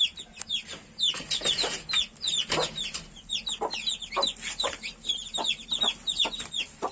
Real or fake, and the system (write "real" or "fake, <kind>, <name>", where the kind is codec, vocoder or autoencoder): real